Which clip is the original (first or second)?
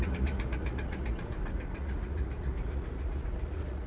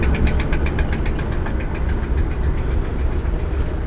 second